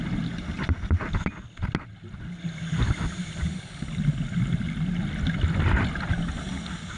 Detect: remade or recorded recorded